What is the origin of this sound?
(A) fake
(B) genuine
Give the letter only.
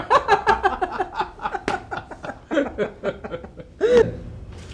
B